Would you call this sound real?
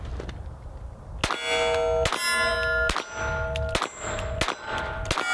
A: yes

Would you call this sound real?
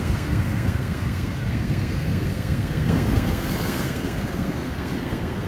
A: no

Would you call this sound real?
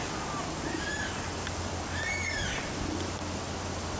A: yes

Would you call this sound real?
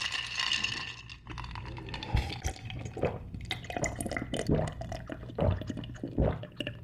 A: yes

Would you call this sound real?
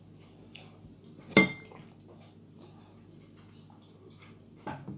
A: yes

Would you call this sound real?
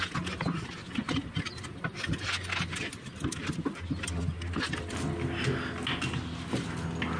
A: yes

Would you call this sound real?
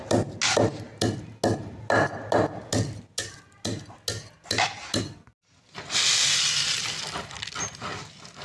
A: yes